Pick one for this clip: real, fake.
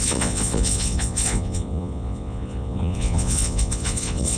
fake